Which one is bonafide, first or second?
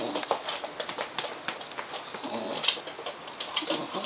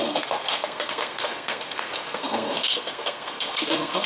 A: first